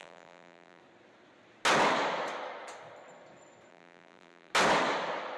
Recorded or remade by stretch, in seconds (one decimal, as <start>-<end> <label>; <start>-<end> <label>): 0.0-0.8 remade; 0.8-3.7 recorded; 3.7-4.5 remade; 4.5-5.4 recorded